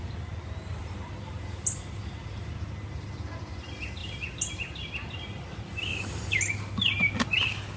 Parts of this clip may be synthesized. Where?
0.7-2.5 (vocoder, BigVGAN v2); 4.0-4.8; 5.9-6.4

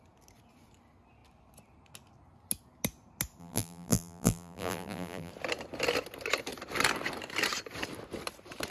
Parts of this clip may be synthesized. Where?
3.4-5.3 (vocoder, BigVGAN v2)

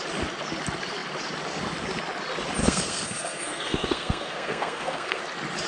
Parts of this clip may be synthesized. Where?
2.6-5.2 (codec, SNAC)

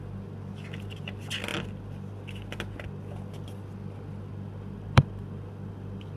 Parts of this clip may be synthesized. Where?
none